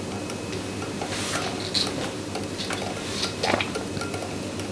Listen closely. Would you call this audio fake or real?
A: real